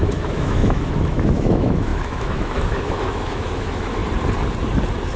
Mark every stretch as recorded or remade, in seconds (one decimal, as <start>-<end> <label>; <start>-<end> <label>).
0.0-4.0 remade; 4.0-5.2 recorded